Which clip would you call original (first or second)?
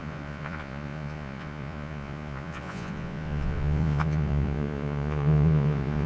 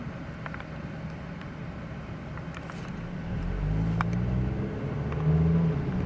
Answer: second